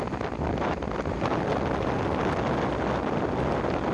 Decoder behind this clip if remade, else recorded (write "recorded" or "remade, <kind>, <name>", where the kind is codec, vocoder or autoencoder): recorded